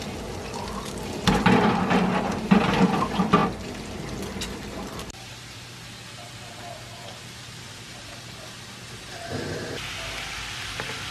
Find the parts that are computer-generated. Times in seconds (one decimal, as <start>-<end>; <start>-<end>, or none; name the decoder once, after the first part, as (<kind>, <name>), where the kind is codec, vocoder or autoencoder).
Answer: none